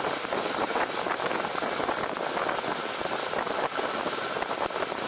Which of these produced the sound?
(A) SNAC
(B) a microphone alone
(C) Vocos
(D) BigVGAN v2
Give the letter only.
B